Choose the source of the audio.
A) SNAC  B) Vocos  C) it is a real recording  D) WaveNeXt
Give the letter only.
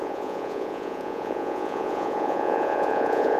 B